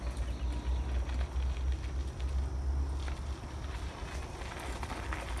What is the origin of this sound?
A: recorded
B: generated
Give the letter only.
A